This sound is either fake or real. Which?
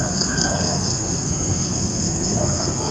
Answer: fake